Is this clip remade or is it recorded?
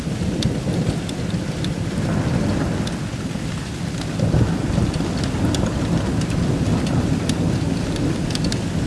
recorded